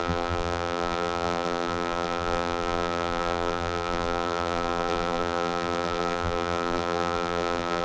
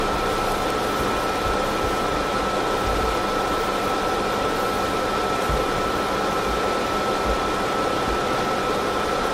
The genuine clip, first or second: second